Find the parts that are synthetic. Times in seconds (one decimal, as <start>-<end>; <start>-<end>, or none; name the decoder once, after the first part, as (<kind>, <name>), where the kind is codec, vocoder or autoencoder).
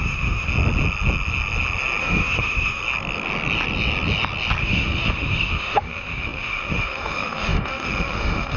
0.0-0.5 (autoencoder, DAC-VAE); 2.0-2.8; 4.6-8.6